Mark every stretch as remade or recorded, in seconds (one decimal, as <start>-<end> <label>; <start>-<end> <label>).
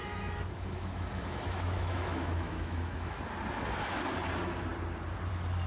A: 0.0-3.2 remade; 3.2-5.7 recorded